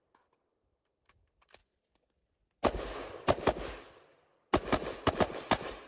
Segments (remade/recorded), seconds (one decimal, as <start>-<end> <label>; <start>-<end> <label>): 0.0-1.6 remade; 1.6-5.1 recorded; 5.1-5.9 remade